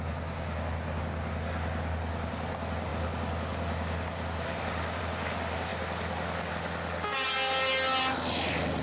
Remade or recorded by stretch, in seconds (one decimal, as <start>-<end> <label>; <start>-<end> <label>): 0.0-8.8 recorded